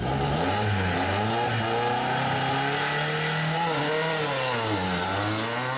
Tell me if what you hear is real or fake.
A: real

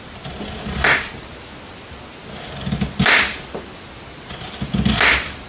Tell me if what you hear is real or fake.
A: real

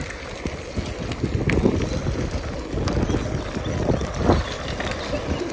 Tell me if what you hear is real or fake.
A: real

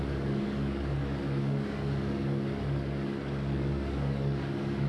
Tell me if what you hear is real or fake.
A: fake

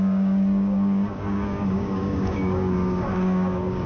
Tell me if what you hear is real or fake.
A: fake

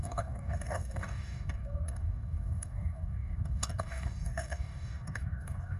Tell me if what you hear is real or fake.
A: fake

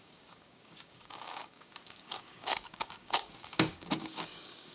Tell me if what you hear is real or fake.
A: fake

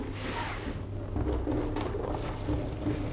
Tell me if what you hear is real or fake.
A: real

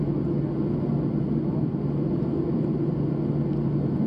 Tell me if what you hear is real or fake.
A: real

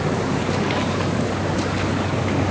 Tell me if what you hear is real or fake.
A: fake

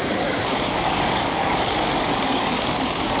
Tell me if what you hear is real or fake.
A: fake